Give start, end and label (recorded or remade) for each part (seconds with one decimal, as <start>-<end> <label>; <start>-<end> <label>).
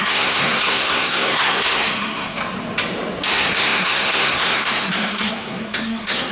0.0-2.4 remade; 2.4-3.2 recorded; 3.2-6.3 remade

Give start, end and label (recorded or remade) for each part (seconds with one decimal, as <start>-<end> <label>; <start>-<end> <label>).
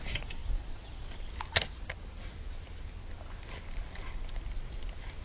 0.0-5.2 recorded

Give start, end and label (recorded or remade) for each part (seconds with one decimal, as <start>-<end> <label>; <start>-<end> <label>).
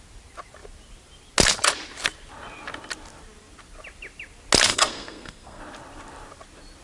0.0-4.7 recorded; 4.7-5.6 remade; 5.6-6.8 recorded